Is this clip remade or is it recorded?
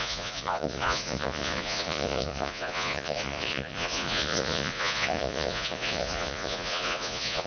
remade